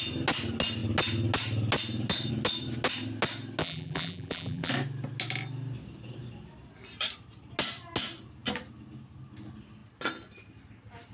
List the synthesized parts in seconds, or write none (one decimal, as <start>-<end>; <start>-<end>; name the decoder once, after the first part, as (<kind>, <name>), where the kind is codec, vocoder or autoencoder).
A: 3.6-4.7 (vocoder, BigVGAN v2)